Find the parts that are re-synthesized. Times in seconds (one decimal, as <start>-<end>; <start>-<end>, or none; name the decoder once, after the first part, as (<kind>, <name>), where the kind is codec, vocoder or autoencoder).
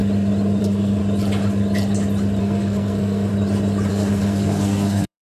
0.6-1.0 (codec, SNAC); 2.4-3.3; 3.9-5.3